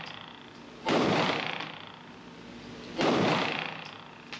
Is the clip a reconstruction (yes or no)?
no